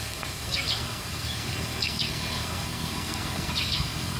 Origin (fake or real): fake